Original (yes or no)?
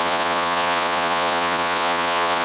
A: no